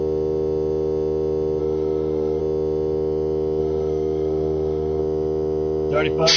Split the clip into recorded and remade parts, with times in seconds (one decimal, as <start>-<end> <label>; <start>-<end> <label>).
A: 0.0-1.6 recorded; 1.6-2.4 remade; 2.4-3.6 recorded; 3.6-5.0 remade; 5.0-6.4 recorded